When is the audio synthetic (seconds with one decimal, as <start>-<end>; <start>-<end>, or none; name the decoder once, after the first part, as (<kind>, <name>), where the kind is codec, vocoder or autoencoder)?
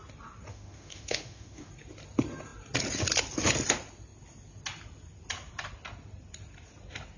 0.5-1.7 (autoencoder, DAC-VAE)